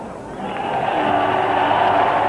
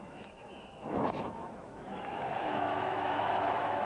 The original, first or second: first